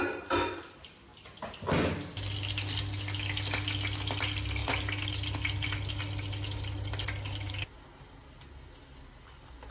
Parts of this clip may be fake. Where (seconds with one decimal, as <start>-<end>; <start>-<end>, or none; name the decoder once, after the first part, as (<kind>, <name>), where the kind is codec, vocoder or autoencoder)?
none

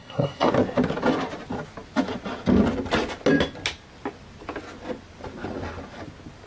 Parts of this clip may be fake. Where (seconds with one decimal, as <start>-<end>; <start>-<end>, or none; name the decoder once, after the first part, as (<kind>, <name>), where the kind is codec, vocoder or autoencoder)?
0.0-0.5 (codec, SNAC)

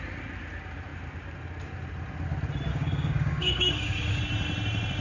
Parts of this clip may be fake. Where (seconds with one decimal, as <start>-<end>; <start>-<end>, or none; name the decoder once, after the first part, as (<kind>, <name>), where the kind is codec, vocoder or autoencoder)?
2.7-4.2 (codec, DAC)

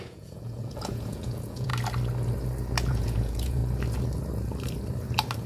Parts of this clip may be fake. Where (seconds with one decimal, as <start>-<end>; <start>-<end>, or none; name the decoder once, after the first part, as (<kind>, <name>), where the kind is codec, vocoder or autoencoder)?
0.0-1.7 (vocoder, Vocos); 2.9-3.6

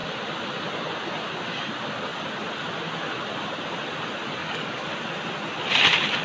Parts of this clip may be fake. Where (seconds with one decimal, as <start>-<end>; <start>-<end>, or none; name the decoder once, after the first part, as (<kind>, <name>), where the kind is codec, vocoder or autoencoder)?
4.4-4.9 (codec, DAC)